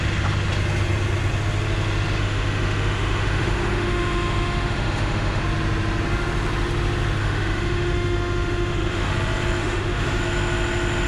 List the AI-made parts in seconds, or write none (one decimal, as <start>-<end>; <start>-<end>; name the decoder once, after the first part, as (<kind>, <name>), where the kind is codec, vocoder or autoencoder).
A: 2.2-5.4 (autoencoder, DAC-VAE); 7.2-9.1; 9.6-10.2